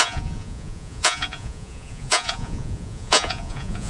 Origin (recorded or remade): remade